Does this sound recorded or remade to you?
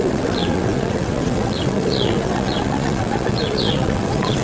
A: remade